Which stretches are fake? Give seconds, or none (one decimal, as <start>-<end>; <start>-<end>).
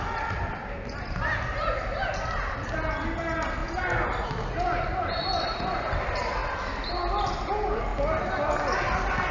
none